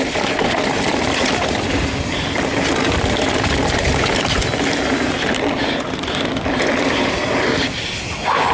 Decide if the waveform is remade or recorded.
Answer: recorded